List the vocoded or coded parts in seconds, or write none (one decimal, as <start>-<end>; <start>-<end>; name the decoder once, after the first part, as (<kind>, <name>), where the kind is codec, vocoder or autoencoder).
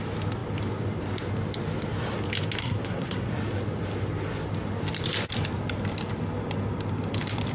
2.6-3.3 (codec, SNAC)